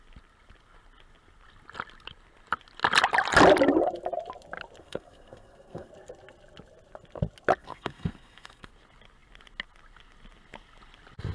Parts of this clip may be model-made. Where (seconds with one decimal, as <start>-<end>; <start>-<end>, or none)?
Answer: 4.8-5.9; 7.6-8.7